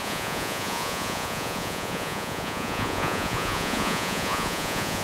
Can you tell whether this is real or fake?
fake